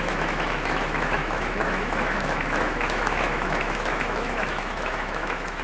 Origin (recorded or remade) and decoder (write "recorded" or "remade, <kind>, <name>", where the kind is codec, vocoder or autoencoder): remade, autoencoder, DAC-VAE